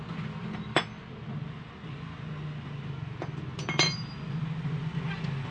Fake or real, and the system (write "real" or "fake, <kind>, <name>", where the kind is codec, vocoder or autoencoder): real